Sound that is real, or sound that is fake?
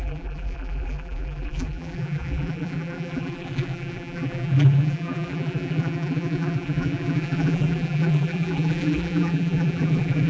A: fake